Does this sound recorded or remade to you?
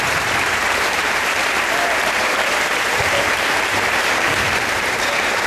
remade